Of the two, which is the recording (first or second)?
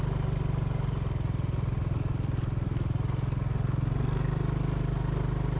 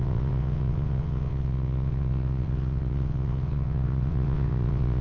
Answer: first